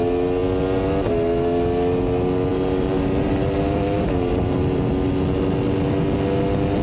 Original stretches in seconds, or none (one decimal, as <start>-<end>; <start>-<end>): 0.0-2.5; 4.9-6.8